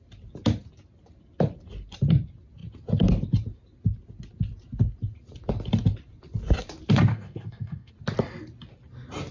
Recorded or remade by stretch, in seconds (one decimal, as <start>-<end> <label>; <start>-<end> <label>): 0.0-7.1 recorded; 7.1-7.9 remade; 7.9-9.3 recorded